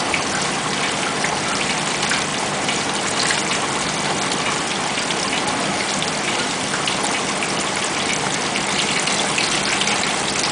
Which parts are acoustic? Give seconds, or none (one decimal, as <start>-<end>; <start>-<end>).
0.0-10.5